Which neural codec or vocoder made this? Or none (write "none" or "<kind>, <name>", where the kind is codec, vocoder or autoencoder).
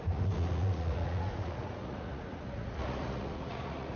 vocoder, Vocos